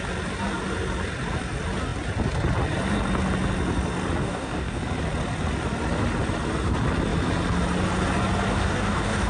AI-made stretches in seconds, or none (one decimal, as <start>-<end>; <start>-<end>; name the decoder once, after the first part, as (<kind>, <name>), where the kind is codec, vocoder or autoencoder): 4.2-4.8 (codec, DAC); 8.5-9.3